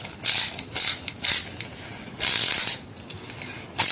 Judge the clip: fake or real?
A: real